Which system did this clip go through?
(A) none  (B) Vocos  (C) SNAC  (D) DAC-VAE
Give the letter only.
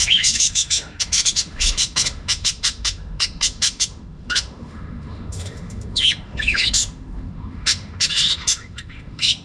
D